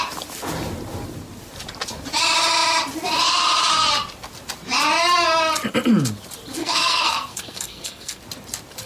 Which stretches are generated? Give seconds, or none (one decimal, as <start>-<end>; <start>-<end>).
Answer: 6.6-8.2